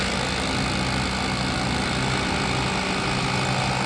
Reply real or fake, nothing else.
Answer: real